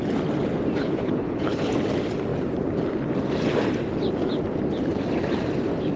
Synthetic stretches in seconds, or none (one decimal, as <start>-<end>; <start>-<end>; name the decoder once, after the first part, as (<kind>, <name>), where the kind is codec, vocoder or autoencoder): 0.8-1.7 (codec, HILCodec)

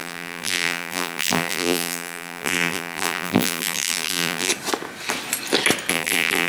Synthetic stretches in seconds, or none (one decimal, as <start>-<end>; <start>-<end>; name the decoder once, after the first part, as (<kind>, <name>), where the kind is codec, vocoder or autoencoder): 0.0-4.5 (vocoder, BigVGAN v2); 5.9-6.5

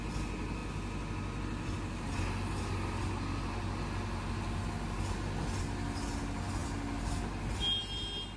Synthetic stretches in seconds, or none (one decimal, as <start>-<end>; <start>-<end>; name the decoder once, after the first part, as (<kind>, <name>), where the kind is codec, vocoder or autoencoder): none

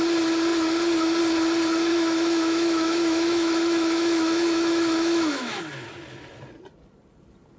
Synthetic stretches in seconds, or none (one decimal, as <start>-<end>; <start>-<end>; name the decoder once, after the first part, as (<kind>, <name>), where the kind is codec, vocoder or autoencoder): 1.9-5.6 (autoencoder, DAC-VAE)